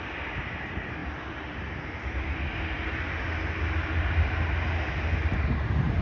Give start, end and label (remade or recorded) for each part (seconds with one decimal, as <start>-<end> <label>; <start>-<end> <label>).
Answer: 0.0-6.0 recorded